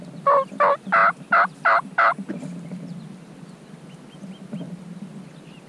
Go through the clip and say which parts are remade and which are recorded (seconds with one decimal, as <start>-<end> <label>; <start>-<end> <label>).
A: 0.0-5.7 recorded